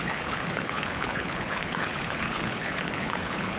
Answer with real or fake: fake